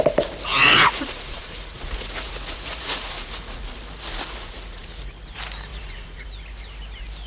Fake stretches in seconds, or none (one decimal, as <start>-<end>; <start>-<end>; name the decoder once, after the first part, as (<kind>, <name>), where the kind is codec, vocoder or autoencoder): 0.5-3.6 (vocoder, Vocos); 4.4-5.0; 5.7-6.3